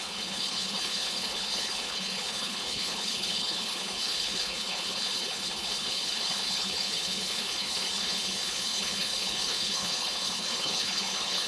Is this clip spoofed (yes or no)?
yes